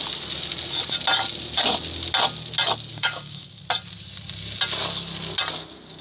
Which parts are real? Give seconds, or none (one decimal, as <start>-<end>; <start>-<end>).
0.0-2.9; 3.6-6.0